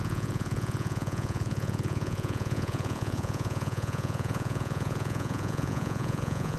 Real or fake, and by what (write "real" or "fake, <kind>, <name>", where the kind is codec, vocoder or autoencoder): fake, vocoder, Vocos